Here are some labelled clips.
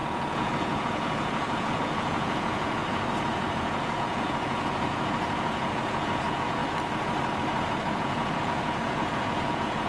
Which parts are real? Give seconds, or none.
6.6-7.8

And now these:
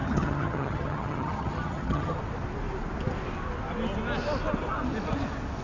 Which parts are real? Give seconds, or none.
2.2-5.6

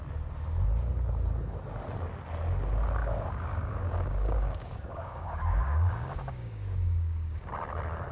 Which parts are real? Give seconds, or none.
0.0-3.0; 7.5-8.1

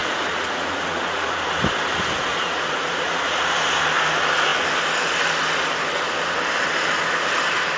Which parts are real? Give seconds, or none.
1.4-2.3; 3.5-7.8

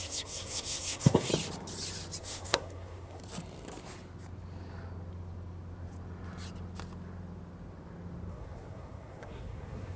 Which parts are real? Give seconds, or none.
1.3-2.2; 3.2-8.3